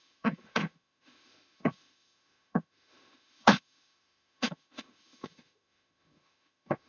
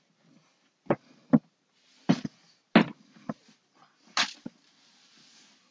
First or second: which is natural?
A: second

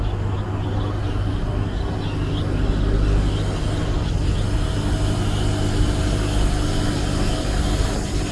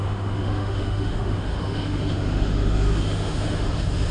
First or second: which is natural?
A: first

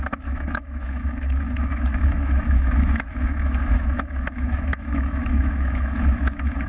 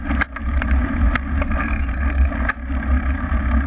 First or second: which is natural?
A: second